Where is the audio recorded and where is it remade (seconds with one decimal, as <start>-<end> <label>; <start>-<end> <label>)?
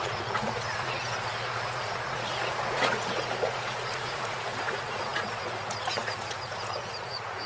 0.0-7.5 remade